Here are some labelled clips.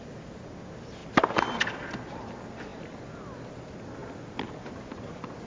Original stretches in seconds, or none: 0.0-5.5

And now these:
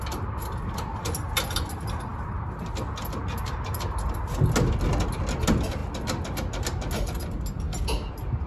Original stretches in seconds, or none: 0.0-8.5

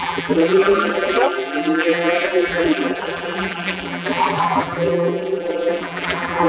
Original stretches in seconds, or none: none

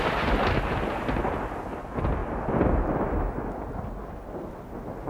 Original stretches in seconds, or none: 0.0-5.1

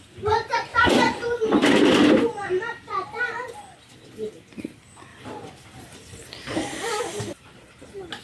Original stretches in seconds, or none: 0.0-0.7; 3.2-5.1; 7.0-8.2

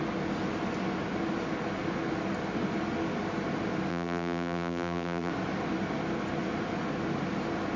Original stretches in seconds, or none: 0.0-3.9; 5.3-7.8